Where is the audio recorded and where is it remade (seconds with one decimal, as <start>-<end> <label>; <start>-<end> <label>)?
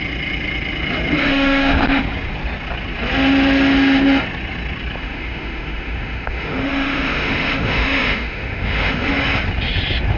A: 0.0-1.2 recorded; 1.2-2.0 remade; 2.0-5.0 recorded; 5.0-9.1 remade; 9.1-10.2 recorded